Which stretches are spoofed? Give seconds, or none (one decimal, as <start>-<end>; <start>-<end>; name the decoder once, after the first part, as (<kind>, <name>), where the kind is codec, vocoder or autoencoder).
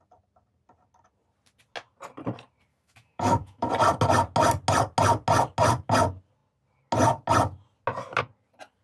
2.7-3.7 (autoencoder, DAC-VAE)